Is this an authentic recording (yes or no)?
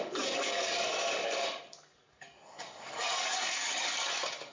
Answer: no